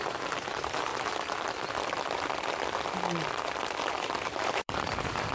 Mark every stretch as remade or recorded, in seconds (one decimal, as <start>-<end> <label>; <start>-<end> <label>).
0.0-0.9 remade; 0.9-4.0 recorded; 4.0-5.3 remade